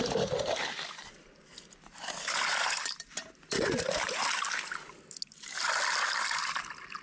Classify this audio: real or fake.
real